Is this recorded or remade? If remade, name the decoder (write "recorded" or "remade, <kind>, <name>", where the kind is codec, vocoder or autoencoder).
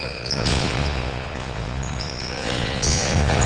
remade, vocoder, Vocos